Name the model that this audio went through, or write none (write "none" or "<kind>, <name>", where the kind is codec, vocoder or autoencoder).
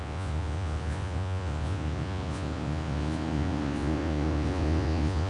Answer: vocoder, Vocos